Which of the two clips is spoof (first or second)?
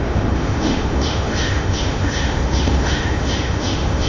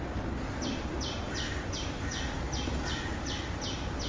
first